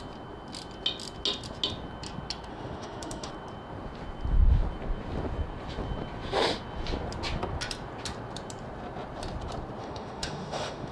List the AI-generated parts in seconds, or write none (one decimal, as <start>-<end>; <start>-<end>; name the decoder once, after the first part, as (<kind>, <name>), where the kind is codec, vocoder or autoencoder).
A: 2.5-3.3 (autoencoder, DAC-VAE); 9.8-10.9